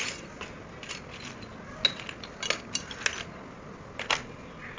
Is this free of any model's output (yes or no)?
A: yes